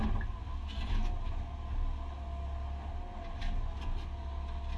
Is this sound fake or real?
real